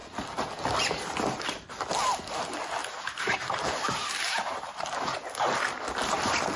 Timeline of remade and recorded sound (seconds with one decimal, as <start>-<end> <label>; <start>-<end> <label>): 0.0-2.8 recorded; 2.8-5.3 remade; 5.3-6.6 recorded